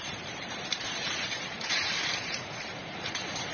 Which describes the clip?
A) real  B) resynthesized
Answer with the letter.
B